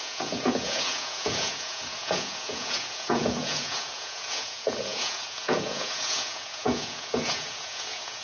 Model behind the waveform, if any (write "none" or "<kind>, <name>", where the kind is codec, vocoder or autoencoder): vocoder, Vocos